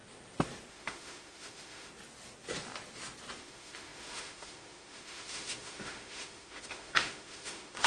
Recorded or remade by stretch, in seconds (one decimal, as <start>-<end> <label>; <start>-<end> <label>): 0.0-0.7 recorded; 0.7-1.9 remade; 1.9-3.4 recorded; 3.4-7.9 remade